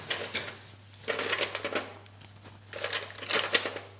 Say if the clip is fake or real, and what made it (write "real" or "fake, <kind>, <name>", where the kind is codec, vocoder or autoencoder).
real